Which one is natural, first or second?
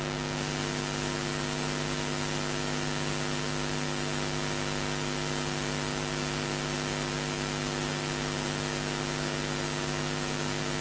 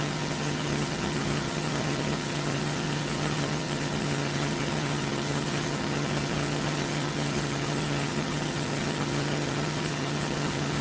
first